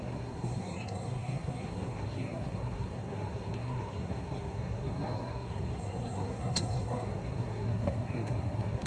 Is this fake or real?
fake